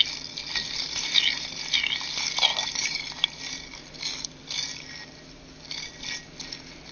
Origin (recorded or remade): recorded